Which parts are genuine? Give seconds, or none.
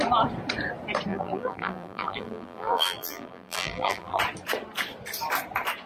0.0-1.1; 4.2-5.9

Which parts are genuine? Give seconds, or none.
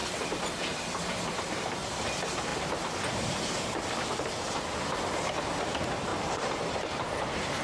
0.6-2.5; 4.8-6.1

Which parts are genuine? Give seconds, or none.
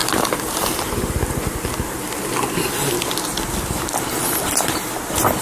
0.0-5.4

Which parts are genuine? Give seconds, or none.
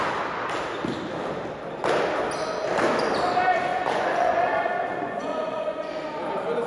0.0-3.7; 5.9-6.7